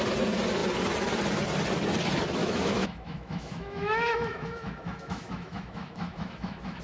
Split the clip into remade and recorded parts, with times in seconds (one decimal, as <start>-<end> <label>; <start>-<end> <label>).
0.0-2.4 recorded; 2.4-6.8 remade